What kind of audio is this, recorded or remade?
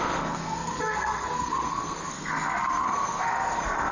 remade